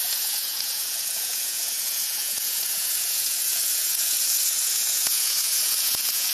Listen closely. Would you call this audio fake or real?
fake